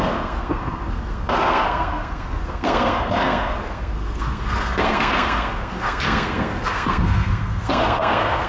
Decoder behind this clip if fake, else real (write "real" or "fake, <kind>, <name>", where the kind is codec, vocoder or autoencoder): fake, codec, SNAC